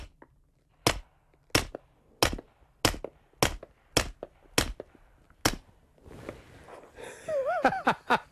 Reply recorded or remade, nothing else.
recorded